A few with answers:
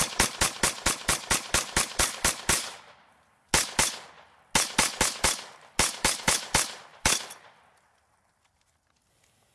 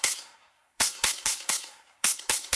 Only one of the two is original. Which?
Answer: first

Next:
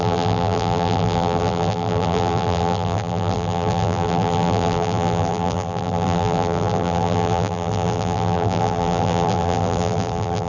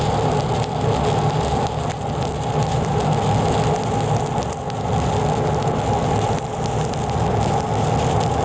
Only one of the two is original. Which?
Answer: second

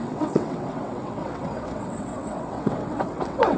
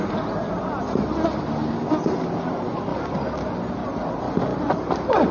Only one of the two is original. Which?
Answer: second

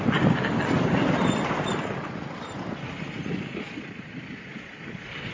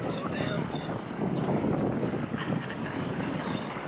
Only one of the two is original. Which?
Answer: first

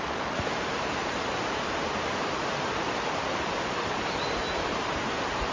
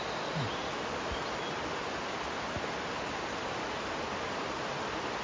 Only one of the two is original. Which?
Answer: second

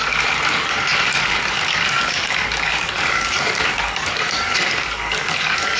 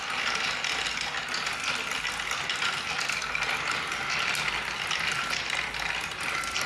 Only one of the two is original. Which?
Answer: second